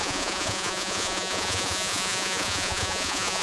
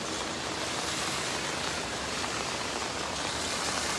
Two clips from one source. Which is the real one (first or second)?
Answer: second